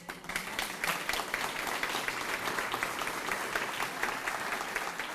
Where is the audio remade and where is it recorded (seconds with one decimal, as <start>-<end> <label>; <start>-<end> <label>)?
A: 0.0-5.1 recorded